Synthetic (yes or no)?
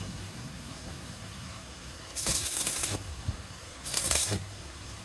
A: yes